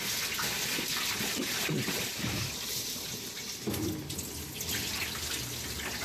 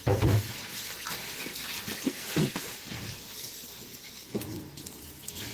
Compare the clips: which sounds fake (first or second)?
second